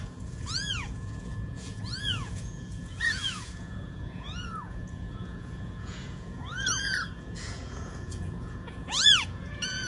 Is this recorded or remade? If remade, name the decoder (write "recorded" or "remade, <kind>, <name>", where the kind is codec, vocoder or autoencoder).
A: remade, vocoder, Vocos